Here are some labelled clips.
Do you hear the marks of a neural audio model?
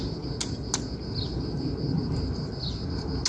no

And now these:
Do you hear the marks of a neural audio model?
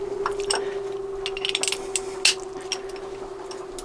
no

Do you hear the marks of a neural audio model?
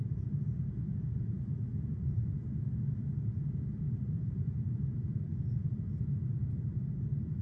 yes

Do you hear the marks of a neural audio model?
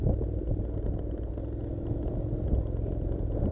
no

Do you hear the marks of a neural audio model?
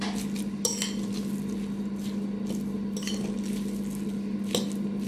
no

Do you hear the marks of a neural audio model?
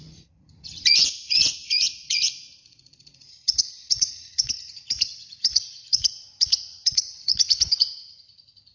yes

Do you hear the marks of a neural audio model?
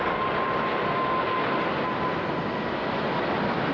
no